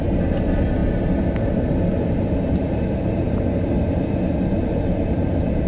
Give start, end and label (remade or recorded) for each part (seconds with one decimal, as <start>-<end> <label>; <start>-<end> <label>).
0.0-5.7 recorded